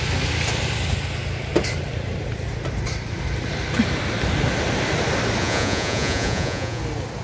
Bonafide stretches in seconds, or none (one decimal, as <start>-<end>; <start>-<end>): 0.0-5.4; 6.8-7.2

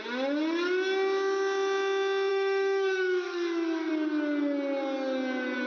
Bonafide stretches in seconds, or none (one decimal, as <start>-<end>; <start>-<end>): 0.0-2.3; 3.9-5.7

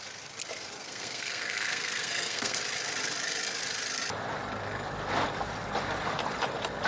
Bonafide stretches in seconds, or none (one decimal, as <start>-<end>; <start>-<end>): 0.0-0.8; 2.6-6.9

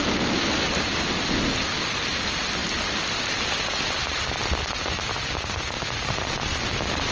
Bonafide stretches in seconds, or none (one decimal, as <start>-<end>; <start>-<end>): 0.0-7.1

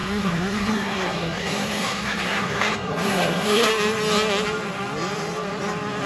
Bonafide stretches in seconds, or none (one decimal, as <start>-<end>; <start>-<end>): 3.7-6.1

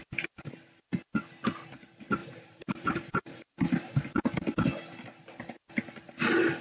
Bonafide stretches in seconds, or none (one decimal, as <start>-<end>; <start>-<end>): 0.0-2.2; 3.9-6.6

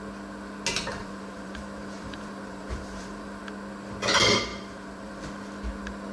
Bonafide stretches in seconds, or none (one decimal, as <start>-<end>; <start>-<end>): 0.0-1.0; 3.4-4.5; 5.2-6.1

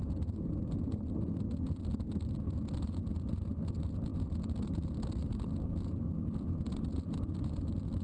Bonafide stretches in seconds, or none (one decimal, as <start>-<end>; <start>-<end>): 0.0-8.0